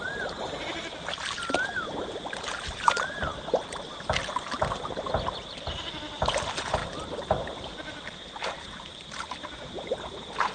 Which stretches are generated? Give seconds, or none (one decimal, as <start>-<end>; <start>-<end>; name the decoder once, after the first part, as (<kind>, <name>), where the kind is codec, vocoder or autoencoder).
none